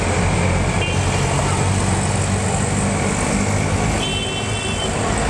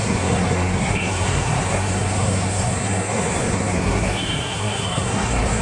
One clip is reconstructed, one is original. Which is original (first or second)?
first